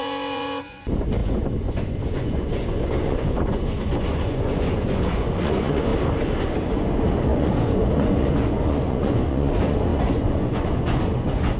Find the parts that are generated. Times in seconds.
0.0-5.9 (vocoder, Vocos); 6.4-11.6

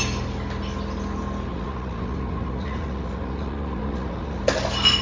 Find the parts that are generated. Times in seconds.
1.5-4.4 (vocoder, Vocos)

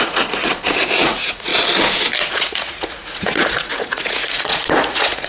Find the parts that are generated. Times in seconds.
0.0-1.5 (vocoder, Vocos); 2.3-5.3

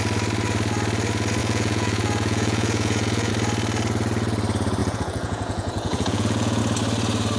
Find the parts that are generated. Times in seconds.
1.4-3.3 (vocoder, Vocos); 4.8-6.6

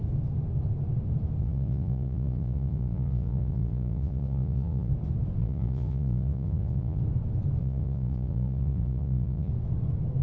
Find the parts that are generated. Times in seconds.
1.4-4.9 (vocoder, Vocos); 5.4-7.0; 7.6-9.5

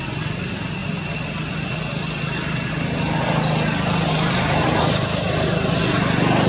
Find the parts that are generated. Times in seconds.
none